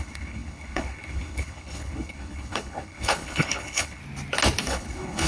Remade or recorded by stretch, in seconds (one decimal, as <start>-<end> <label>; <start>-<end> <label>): 0.0-4.0 remade; 4.0-4.6 recorded; 4.6-5.3 remade